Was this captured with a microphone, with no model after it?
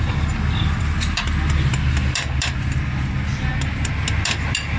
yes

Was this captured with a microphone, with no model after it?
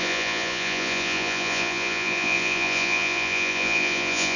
no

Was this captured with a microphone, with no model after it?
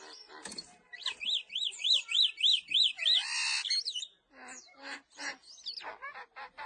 yes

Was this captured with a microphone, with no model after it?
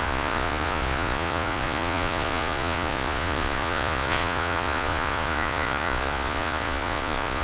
no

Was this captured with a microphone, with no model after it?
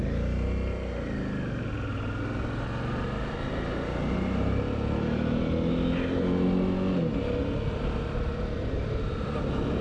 yes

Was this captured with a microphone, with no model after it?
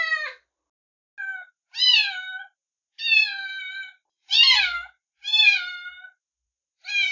yes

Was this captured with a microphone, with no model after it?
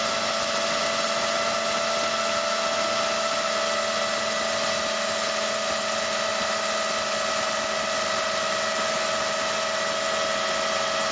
yes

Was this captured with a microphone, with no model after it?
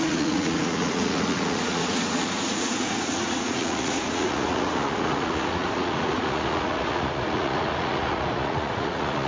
no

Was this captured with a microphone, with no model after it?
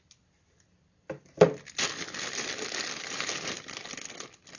yes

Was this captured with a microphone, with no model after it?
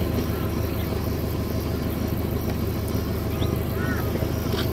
yes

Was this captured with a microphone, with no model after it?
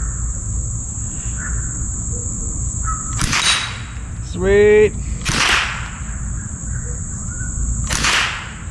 yes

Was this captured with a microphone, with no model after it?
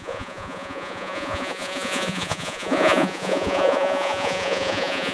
no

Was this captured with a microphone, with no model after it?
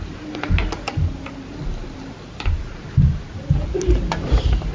yes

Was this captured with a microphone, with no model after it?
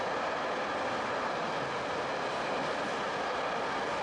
yes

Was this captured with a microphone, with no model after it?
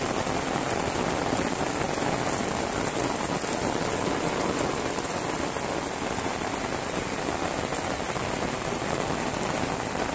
yes